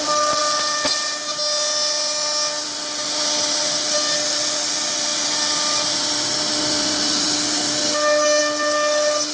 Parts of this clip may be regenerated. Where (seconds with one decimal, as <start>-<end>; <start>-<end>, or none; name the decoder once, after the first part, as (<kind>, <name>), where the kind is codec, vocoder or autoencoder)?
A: none